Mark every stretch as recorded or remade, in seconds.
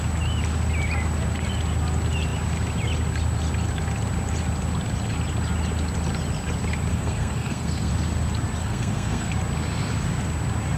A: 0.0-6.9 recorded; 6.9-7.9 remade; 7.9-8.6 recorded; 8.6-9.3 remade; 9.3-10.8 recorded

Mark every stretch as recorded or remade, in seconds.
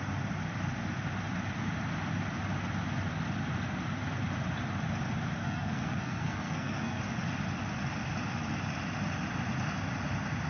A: 0.0-5.4 recorded; 5.4-7.0 remade; 7.0-10.5 recorded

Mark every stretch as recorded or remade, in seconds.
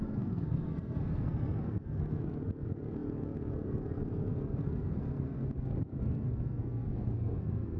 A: 0.0-7.8 remade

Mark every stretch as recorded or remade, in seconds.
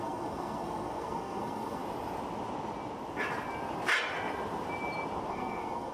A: 0.0-1.8 remade; 1.8-5.3 recorded; 5.3-5.9 remade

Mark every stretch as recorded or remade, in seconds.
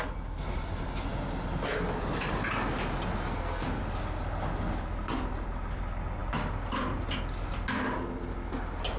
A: 0.0-3.3 recorded; 3.3-3.8 remade; 3.8-9.0 recorded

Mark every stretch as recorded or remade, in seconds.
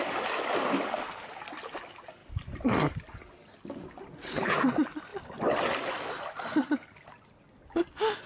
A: 0.0-8.3 recorded